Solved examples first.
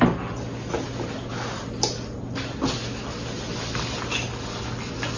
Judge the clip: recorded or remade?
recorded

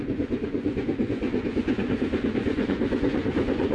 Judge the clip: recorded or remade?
remade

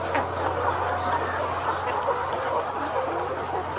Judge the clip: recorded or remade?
recorded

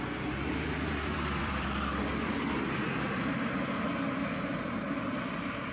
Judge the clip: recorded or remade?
remade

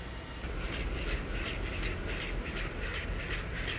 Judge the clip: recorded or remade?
recorded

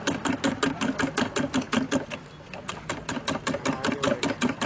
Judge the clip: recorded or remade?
recorded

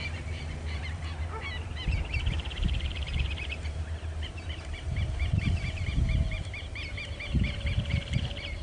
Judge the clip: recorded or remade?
remade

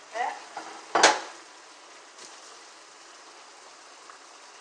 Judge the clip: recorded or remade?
recorded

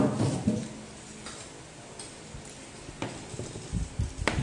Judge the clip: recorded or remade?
recorded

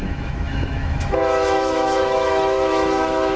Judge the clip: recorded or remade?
remade